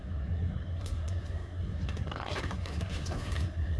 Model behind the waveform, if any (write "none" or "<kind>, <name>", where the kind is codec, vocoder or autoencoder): codec, SNAC